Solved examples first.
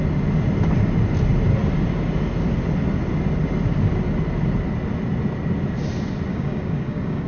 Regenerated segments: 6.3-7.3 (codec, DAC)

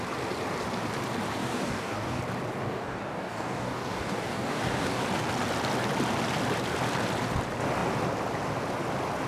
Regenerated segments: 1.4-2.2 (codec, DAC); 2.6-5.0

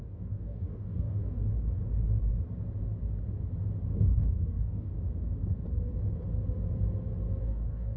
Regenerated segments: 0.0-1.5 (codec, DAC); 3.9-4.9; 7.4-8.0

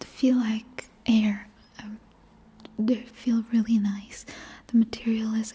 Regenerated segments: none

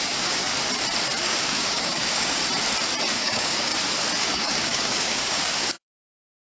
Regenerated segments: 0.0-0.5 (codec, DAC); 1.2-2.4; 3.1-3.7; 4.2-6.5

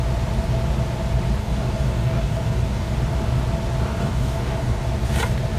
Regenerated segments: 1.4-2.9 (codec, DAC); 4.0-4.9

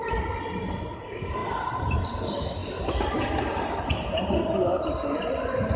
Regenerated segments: none

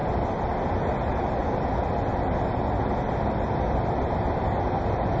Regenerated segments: none